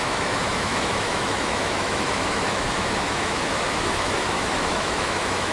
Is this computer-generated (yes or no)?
yes